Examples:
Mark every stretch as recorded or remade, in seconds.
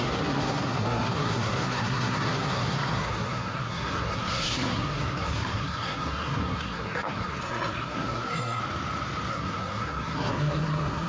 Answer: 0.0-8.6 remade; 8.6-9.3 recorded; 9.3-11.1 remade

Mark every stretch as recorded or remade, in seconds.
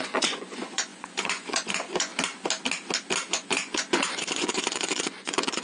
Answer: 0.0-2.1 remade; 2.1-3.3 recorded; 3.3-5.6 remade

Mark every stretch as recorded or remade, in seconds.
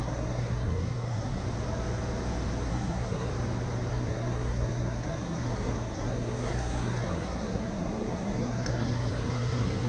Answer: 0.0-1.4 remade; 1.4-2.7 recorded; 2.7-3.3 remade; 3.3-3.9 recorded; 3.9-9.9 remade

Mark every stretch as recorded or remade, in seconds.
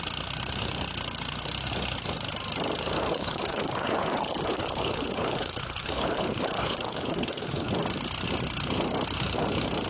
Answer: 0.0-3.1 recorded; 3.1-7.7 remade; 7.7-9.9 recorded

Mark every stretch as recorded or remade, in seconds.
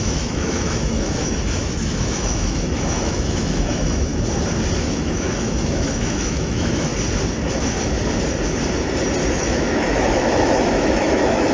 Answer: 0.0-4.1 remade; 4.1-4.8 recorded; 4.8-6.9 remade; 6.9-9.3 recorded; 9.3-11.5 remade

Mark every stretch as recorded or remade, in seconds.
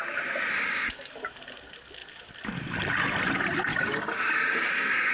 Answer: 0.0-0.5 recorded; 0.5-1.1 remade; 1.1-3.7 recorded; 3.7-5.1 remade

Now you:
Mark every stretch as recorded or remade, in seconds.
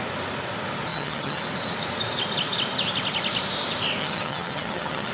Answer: 0.0-0.9 recorded; 0.9-1.4 remade; 1.4-4.0 recorded; 4.0-5.1 remade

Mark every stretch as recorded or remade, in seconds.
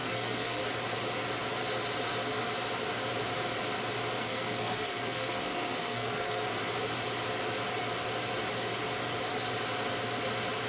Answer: 0.0-0.6 remade; 0.6-4.2 recorded; 4.2-6.4 remade; 6.4-10.7 recorded